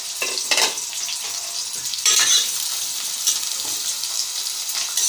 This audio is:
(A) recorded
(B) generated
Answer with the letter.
B